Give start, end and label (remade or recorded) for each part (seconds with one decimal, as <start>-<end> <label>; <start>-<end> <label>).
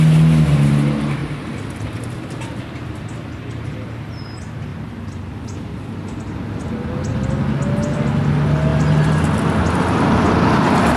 0.0-4.7 recorded; 4.7-7.3 remade; 7.3-8.7 recorded; 8.7-11.0 remade